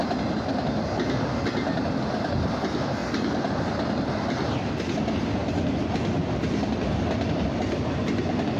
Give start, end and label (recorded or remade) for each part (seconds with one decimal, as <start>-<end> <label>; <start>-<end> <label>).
0.0-3.0 recorded; 3.0-3.5 remade; 3.5-8.6 recorded